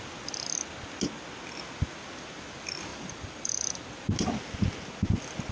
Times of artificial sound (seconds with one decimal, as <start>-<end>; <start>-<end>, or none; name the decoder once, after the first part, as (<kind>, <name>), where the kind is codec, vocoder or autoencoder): 2.9-3.8 (vocoder, BigVGAN v2)